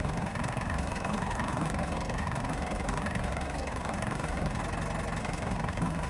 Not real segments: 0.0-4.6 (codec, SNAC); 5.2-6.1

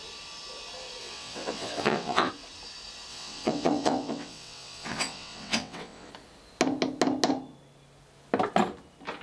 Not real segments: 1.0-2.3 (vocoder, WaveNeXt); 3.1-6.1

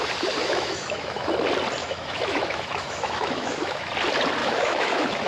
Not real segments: 0.4-1.3 (autoencoder, DAC-VAE); 1.8-3.9; 4.4-5.3